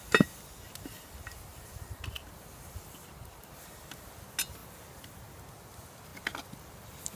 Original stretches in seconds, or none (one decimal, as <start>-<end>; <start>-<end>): 0.0-7.2